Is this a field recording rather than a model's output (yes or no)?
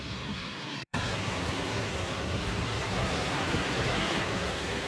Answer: no